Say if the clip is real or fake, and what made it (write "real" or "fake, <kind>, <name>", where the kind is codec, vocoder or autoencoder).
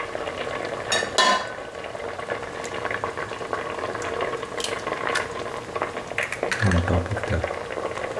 real